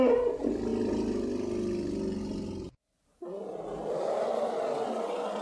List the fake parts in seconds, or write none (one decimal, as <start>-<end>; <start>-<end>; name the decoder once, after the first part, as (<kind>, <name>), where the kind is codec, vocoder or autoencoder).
none